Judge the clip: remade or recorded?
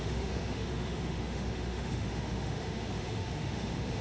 remade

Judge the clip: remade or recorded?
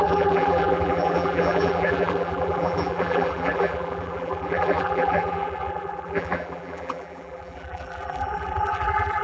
remade